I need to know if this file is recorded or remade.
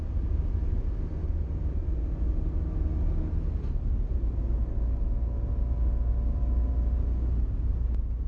recorded